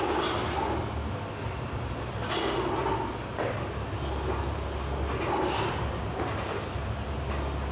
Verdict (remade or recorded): recorded